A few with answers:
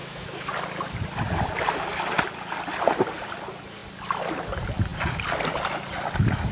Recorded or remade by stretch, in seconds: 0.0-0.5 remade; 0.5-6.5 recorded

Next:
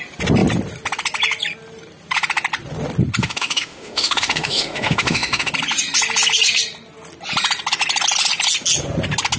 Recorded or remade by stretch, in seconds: 0.0-3.2 recorded; 3.2-5.5 remade; 5.5-9.4 recorded

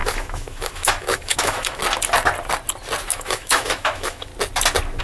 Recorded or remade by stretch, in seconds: 0.0-1.8 remade; 1.8-3.1 recorded; 3.1-4.3 remade; 4.3-5.0 recorded